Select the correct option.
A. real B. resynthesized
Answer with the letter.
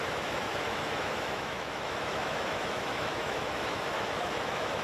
B